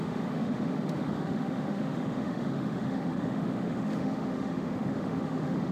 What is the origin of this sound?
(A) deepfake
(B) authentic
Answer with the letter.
A